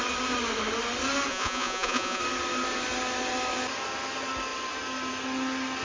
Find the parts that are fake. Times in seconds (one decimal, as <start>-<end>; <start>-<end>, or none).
1.3-2.2